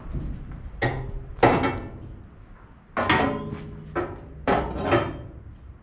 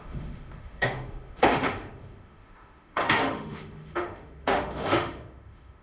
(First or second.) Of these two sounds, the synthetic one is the second